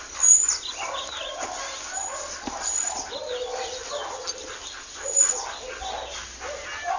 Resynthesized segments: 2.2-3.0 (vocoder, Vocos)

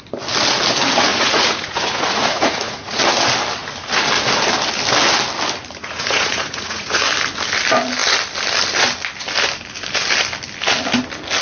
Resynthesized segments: 1.1-3.0 (vocoder, Vocos); 5.8-7.0

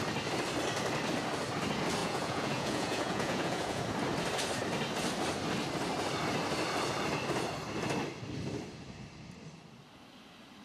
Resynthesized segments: 2.0-3.8 (vocoder, Vocos)

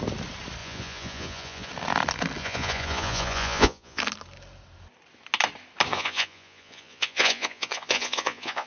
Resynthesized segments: 0.6-1.7 (vocoder, Vocos); 2.4-4.0; 5.9-8.7